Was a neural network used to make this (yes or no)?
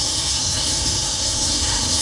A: yes